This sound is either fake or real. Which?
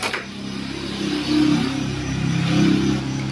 real